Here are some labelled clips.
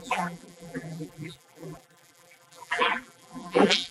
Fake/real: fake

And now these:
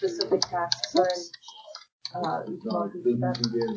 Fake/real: real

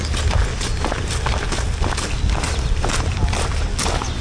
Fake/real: real